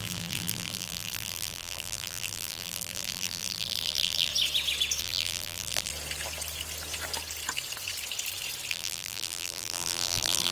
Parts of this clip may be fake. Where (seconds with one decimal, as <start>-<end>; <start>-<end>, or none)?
0.0-4.3; 5.0-5.9; 8.7-10.5